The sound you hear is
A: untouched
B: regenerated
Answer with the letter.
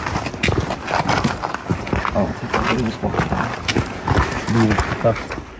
A